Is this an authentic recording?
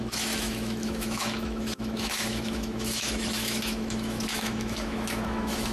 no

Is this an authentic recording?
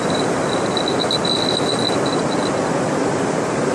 yes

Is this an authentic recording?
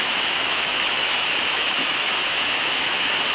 no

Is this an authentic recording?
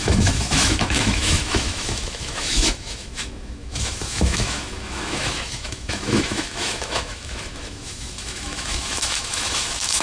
no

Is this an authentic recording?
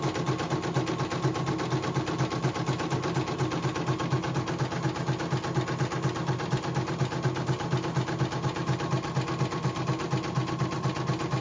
yes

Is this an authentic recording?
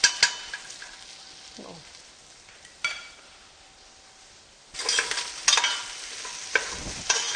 yes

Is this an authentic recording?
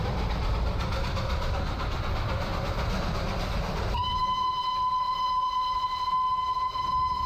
yes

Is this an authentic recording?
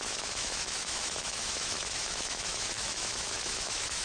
no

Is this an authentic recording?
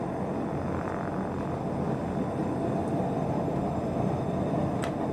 yes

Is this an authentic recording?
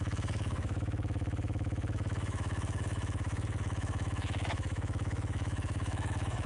no